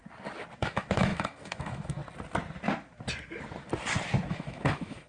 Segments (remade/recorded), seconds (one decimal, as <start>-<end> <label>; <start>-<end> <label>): 0.0-0.6 recorded; 0.6-2.0 remade; 2.0-4.3 recorded; 4.3-5.1 remade